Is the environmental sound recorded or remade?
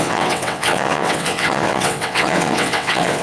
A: remade